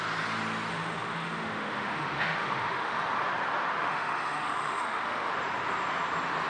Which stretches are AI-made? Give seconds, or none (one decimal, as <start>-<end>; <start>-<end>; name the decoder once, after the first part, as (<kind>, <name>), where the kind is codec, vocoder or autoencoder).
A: 0.7-3.0 (autoencoder, DAC-VAE); 3.8-5.3